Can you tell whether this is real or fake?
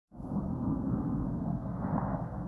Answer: fake